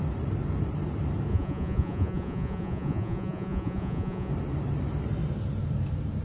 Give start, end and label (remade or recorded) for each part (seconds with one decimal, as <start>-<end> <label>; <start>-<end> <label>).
0.0-1.3 recorded; 1.3-4.3 remade; 4.3-6.2 recorded